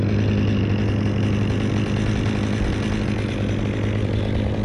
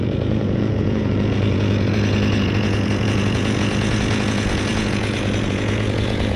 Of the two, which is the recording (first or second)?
first